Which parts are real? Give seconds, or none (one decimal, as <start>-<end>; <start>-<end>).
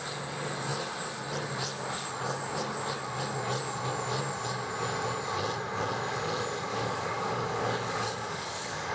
0.0-6.7